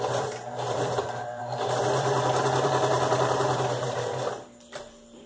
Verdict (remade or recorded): remade